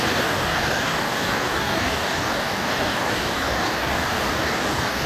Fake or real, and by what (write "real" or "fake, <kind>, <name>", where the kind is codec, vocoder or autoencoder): fake, codec, DAC